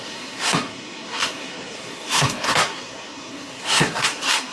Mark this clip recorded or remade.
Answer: remade